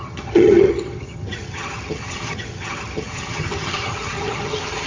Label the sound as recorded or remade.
remade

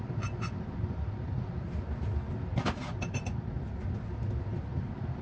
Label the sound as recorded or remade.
recorded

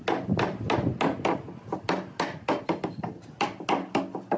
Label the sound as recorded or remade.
recorded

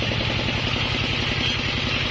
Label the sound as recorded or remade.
recorded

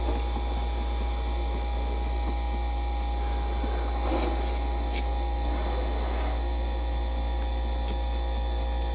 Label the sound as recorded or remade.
recorded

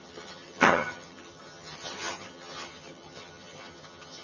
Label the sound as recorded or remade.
remade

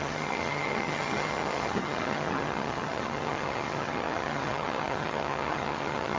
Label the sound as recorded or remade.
remade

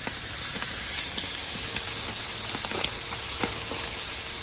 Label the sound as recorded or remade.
recorded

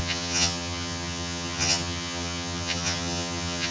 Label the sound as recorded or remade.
remade